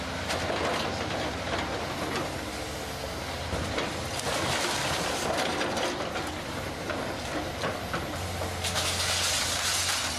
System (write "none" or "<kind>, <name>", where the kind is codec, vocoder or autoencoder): none